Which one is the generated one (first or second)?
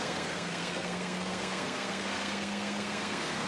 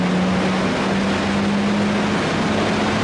first